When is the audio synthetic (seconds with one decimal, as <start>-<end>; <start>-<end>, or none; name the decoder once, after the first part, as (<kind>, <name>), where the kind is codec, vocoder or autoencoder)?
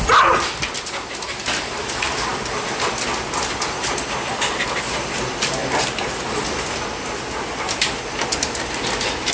none